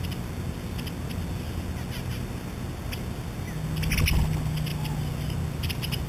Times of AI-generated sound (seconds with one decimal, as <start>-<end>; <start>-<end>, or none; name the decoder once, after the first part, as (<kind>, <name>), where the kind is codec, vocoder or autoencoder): none